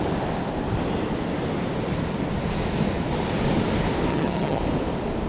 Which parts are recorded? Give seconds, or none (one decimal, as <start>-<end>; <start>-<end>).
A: 0.0-4.1; 4.6-5.3